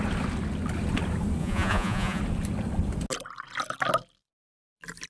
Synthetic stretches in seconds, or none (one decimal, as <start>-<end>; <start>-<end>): 1.4-2.2